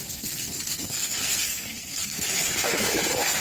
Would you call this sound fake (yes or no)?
yes